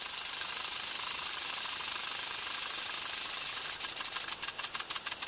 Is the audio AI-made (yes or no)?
no